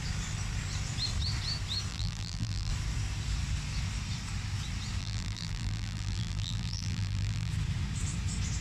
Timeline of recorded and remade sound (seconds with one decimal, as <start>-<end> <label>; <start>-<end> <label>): 0.0-1.9 recorded; 1.9-2.7 remade; 2.7-5.0 recorded; 5.0-7.5 remade; 7.5-8.6 recorded